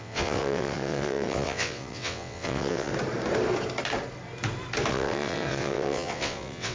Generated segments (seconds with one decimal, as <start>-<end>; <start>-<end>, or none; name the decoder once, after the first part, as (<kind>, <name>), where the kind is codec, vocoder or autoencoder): 0.0-2.9 (vocoder, WaveNeXt); 4.9-6.7